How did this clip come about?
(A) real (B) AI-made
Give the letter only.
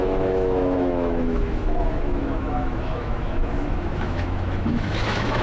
B